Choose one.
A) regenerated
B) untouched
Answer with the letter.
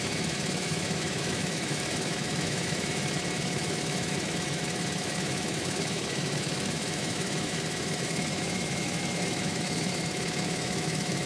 A